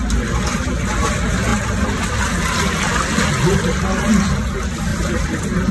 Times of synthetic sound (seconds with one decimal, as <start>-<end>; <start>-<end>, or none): 4.9-5.7